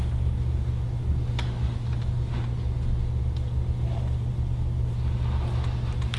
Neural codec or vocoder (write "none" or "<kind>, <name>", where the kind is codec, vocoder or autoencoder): none